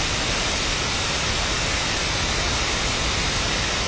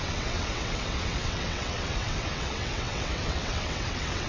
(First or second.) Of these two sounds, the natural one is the first